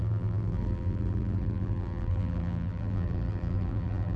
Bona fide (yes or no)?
no